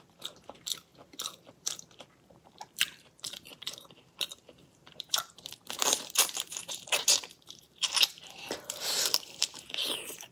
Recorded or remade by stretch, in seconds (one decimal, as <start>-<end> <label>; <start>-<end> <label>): 0.0-0.9 remade; 0.9-1.5 recorded; 1.5-10.3 remade